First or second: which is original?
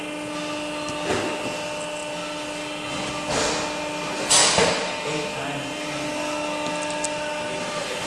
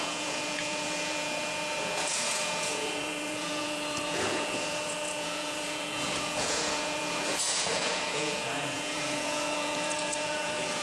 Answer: first